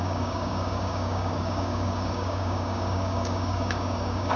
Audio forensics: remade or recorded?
remade